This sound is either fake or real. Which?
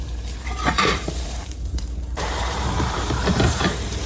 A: fake